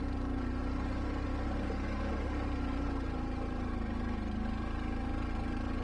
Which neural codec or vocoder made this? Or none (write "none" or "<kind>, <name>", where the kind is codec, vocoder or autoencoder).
none